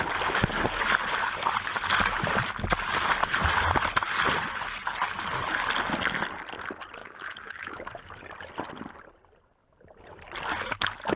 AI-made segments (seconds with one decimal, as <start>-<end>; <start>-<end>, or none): 7.0-7.9